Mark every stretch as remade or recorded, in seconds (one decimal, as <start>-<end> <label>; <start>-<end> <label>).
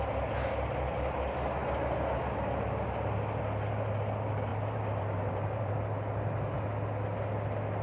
0.0-4.5 recorded; 4.5-5.7 remade; 5.7-7.8 recorded